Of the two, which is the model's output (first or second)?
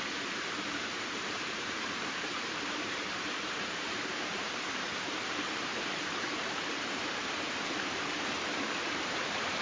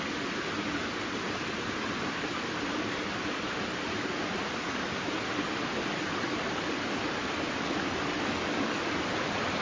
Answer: first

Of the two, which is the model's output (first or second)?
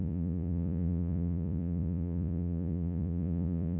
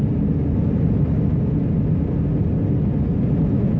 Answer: first